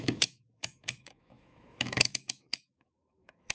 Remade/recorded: remade